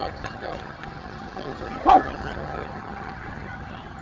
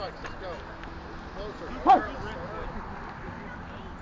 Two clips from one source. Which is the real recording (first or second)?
second